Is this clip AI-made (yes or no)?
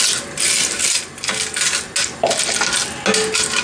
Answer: no